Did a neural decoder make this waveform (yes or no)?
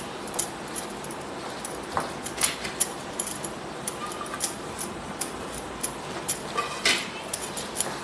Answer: yes